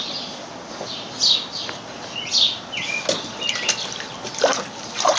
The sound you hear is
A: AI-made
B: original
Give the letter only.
B